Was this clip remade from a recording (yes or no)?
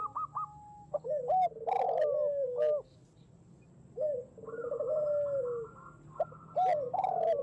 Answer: no